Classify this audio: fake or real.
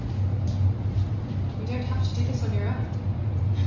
real